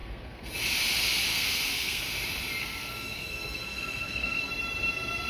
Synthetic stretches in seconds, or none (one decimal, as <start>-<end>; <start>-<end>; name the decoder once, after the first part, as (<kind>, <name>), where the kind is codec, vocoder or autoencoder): 0.0-0.5 (codec, SNAC); 1.3-2.0; 2.6-4.5